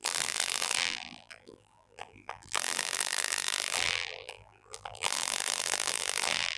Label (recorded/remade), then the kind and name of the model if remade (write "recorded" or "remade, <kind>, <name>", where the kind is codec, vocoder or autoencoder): remade, vocoder, BigVGAN v2